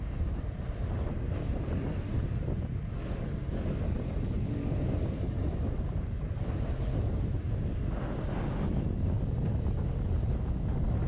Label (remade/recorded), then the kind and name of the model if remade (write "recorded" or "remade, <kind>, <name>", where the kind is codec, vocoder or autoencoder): recorded